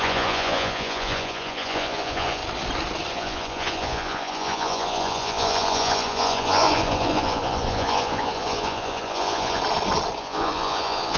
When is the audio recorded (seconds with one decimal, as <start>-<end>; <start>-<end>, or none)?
2.4-3.1; 9.6-10.2